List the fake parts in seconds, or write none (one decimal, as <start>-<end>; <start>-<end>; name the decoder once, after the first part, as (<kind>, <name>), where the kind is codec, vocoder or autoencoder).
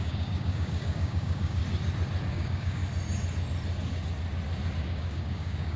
0.0-1.6 (codec, DAC); 2.3-2.8; 4.8-5.8